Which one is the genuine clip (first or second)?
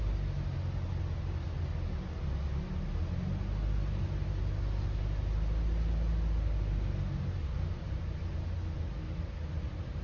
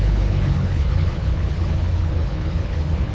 first